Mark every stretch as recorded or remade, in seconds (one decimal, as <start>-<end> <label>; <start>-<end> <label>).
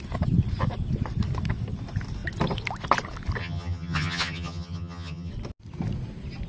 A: 0.0-3.4 recorded; 3.4-5.3 remade; 5.3-6.5 recorded